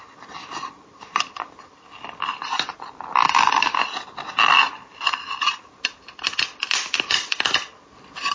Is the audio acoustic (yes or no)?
no